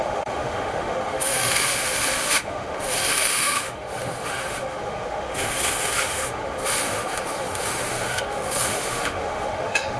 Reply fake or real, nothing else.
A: fake